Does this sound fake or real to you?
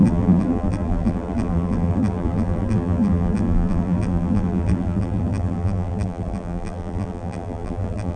fake